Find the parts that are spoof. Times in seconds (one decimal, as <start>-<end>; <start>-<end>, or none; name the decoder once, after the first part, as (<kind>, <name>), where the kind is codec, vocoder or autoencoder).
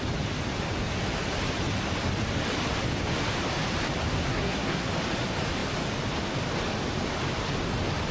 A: 4.2-4.9 (codec, SNAC)